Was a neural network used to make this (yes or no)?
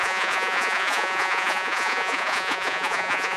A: yes